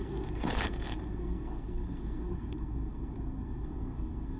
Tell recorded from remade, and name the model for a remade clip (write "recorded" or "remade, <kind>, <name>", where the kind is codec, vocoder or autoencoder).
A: remade, codec, SNAC